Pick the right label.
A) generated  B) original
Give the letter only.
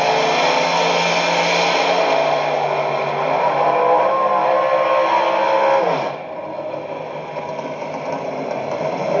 B